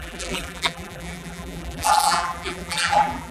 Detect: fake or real fake